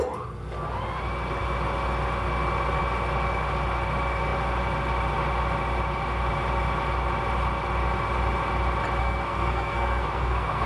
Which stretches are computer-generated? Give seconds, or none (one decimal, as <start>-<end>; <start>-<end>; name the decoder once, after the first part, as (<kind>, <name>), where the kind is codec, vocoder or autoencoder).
9.0-10.7 (codec, SNAC)